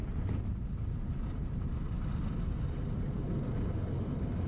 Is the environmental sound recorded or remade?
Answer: remade